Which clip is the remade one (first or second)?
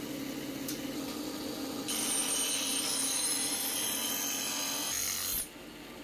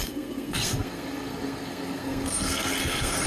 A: second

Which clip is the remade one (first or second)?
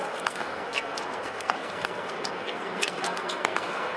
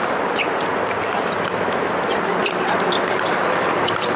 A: first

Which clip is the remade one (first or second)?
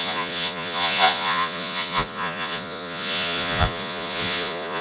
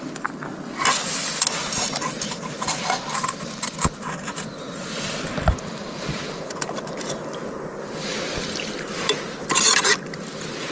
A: first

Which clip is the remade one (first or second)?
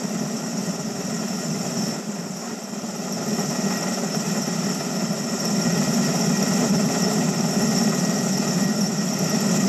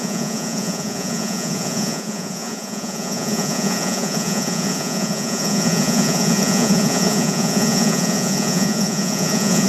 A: second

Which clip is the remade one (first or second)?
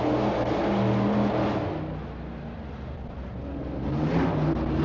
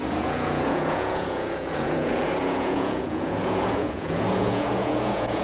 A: second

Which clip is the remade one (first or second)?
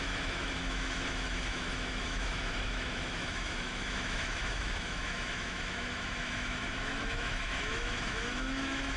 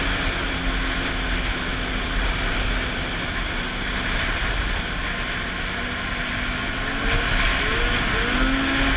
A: first